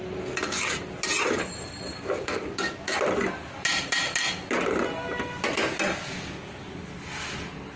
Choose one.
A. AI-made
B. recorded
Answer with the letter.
B